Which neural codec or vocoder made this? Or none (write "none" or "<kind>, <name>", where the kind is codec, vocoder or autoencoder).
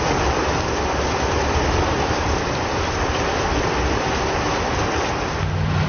none